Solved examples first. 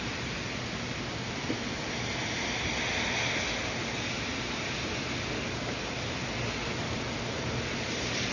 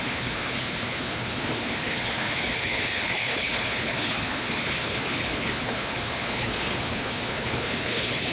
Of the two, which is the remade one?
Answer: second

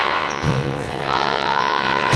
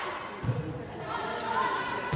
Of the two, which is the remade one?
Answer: first